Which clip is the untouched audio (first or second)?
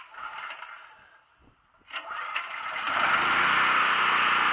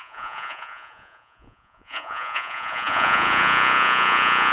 first